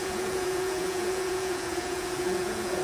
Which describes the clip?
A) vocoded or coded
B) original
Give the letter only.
A